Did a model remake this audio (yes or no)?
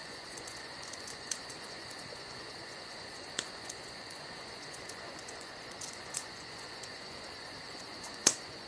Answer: yes